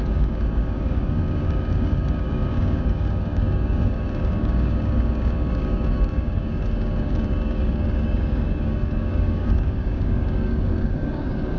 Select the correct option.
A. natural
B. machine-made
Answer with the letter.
B